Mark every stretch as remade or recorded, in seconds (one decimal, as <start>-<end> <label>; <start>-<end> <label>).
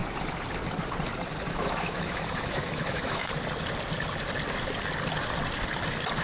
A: 0.0-1.5 recorded; 1.5-3.3 remade; 3.3-6.2 recorded